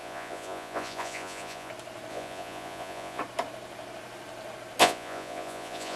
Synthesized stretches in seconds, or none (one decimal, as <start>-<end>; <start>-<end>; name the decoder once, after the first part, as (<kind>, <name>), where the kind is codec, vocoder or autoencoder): 0.0-1.7 (vocoder, Vocos); 2.1-3.2; 4.8-6.0

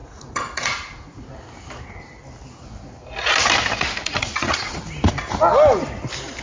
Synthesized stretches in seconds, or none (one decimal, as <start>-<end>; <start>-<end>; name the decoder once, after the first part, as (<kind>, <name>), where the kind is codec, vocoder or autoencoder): 0.0-1.2 (vocoder, Vocos); 4.0-4.8

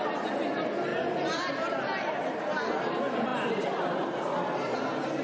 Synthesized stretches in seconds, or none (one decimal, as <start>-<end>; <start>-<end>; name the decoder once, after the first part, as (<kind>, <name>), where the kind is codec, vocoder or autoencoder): none

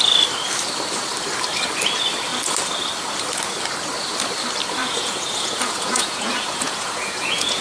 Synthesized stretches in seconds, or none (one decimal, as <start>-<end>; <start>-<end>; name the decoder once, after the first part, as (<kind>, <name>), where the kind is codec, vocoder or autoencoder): 4.8-7.6 (vocoder, Vocos)